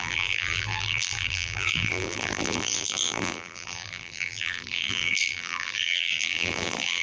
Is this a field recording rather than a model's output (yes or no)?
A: no